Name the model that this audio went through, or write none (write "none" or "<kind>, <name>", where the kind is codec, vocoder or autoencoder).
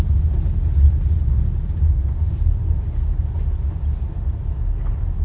none